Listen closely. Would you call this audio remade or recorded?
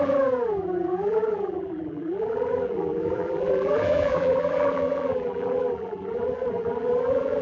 remade